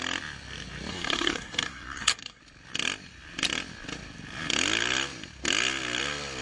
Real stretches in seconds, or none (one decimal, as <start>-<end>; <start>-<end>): 0.0-0.9; 2.4-6.4